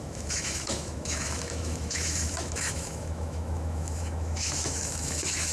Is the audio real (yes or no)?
no